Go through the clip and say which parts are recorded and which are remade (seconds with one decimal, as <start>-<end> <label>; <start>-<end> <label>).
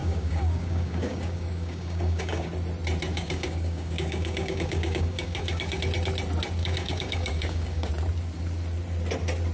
0.0-2.5 remade; 2.5-3.1 recorded; 3.1-5.8 remade; 5.8-6.6 recorded; 6.6-7.9 remade; 7.9-9.5 recorded